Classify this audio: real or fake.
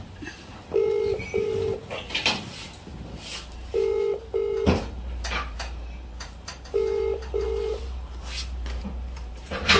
fake